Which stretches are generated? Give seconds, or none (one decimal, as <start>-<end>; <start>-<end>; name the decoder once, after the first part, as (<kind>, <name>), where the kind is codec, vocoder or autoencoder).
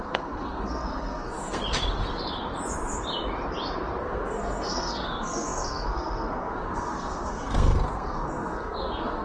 0.0-1.6 (codec, SNAC); 4.0-9.2